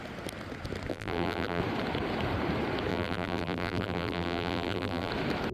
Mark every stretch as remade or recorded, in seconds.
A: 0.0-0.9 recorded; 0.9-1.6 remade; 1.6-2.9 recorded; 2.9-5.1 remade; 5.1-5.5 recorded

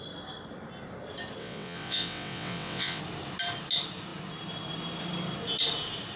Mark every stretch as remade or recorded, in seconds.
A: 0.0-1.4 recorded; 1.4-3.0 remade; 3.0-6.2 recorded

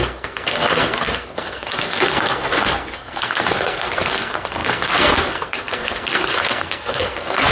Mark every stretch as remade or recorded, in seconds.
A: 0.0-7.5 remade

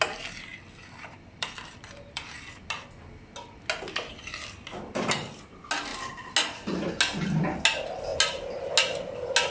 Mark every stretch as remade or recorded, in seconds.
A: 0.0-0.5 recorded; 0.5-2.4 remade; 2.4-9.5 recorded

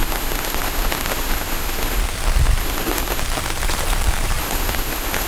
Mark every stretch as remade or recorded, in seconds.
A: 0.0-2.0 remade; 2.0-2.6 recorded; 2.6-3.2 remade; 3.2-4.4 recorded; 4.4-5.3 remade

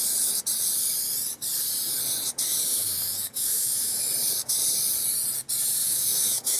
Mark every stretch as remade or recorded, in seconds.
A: 0.0-2.7 recorded; 2.7-4.0 remade; 4.0-5.8 recorded; 5.8-6.6 remade

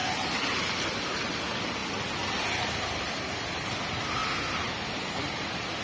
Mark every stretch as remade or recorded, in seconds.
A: 0.0-5.8 recorded